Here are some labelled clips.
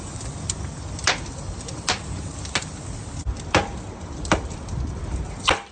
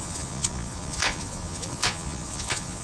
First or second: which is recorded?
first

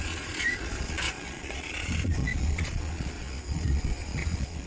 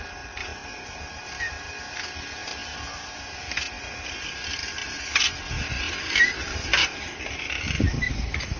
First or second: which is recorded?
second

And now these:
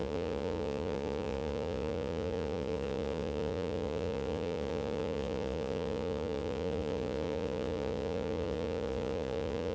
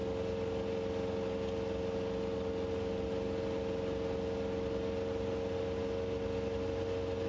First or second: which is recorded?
second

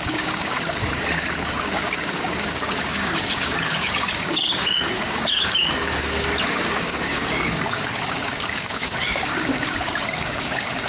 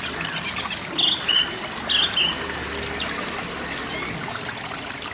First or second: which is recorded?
second